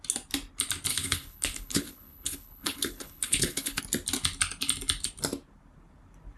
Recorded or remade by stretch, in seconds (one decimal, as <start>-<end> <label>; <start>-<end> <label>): 0.0-0.9 recorded; 0.9-3.8 remade; 3.8-6.4 recorded